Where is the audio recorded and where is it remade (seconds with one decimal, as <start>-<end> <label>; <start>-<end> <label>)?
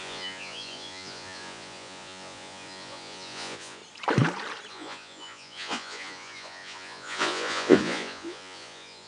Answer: 0.0-3.8 remade; 3.8-4.7 recorded; 4.7-9.1 remade